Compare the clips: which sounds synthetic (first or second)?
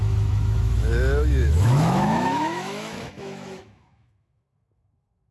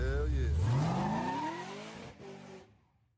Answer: first